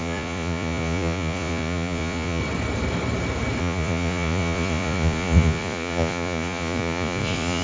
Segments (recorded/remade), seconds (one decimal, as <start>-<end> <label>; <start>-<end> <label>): 0.0-2.4 remade; 2.4-3.6 recorded; 3.6-7.6 remade